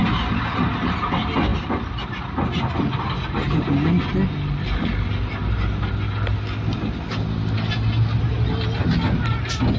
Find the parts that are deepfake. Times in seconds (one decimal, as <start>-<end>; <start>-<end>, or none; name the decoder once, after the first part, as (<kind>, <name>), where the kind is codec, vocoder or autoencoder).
none